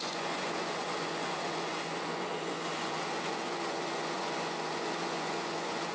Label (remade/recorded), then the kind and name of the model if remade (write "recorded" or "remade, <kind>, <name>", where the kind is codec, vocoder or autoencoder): remade, vocoder, Vocos